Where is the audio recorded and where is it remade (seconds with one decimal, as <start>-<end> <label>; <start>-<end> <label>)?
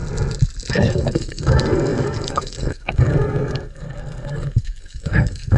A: 0.0-0.7 recorded; 0.7-5.6 remade